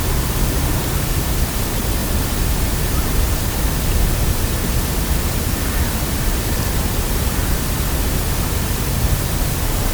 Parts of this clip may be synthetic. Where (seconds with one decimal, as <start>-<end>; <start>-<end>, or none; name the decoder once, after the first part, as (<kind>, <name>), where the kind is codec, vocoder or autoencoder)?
0.0-7.4 (vocoder, BigVGAN v2); 8.2-9.9